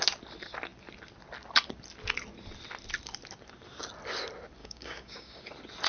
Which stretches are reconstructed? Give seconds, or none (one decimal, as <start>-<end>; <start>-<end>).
4.6-5.5